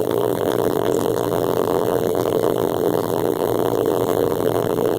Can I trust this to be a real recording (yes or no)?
no